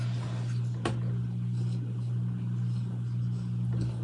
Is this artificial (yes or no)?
no